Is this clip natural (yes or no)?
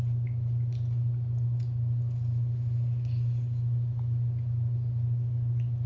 yes